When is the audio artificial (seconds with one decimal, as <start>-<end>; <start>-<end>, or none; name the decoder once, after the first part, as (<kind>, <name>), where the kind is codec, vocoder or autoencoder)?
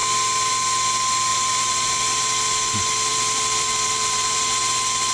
1.3-1.9 (vocoder, BigVGAN v2); 3.1-4.5